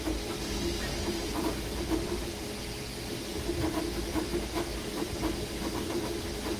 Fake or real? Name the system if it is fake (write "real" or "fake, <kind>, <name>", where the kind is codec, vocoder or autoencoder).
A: real